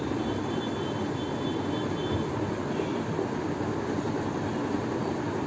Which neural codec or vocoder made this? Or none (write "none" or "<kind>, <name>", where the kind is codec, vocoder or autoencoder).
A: none